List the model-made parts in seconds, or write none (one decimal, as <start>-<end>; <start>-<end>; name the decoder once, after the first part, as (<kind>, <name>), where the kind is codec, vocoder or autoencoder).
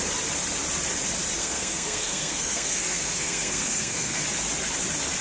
1.4-4.2 (codec, SNAC)